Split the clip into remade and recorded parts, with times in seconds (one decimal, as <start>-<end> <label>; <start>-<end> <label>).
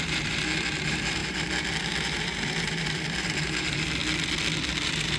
0.0-4.0 remade; 4.0-4.6 recorded; 4.6-5.2 remade